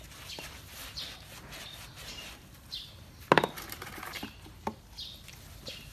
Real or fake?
real